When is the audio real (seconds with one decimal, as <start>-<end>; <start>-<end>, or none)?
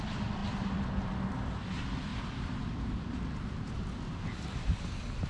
0.0-0.4; 1.1-2.1